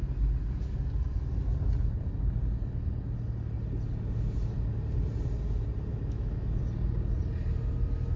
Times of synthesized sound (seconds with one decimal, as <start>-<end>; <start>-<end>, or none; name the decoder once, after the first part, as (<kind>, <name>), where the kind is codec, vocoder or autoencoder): 5.9-6.6 (autoencoder, DAC-VAE)